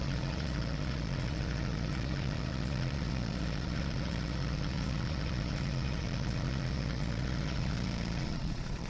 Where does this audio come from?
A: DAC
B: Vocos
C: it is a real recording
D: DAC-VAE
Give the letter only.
B